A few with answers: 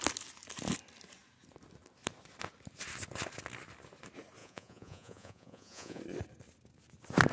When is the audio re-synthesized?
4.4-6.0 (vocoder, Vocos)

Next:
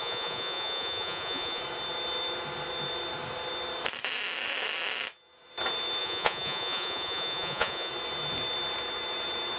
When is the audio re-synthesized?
0.0-1.6 (vocoder, Vocos); 6.0-7.9

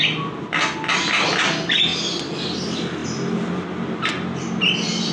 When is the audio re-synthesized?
none